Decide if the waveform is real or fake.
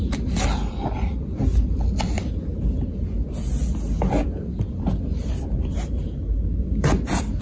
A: real